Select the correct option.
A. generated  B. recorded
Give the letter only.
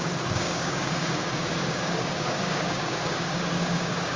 A